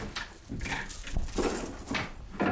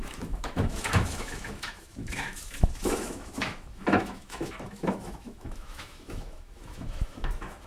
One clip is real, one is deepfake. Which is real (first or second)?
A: first